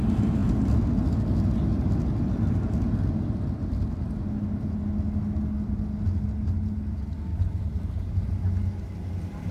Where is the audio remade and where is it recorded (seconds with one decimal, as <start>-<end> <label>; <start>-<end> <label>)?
0.0-7.3 recorded; 7.3-8.3 remade; 8.3-9.5 recorded